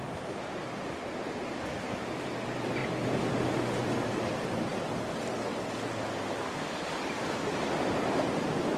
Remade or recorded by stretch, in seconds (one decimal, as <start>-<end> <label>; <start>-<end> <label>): 0.0-2.8 remade; 2.8-3.3 recorded; 3.3-4.7 remade; 4.7-7.2 recorded; 7.2-8.8 remade